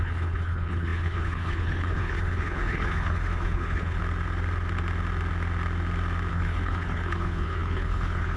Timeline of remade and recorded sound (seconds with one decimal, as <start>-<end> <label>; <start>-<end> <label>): 0.0-4.0 remade; 4.0-6.3 recorded; 6.3-8.4 remade